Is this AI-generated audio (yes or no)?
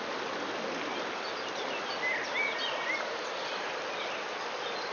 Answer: no